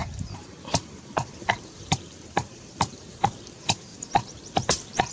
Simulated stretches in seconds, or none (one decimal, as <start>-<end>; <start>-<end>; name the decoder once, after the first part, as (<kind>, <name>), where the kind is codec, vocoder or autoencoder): 0.0-5.1 (vocoder, BigVGAN v2)